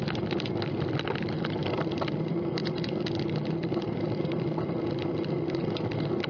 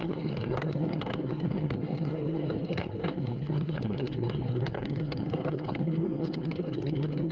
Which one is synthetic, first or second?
second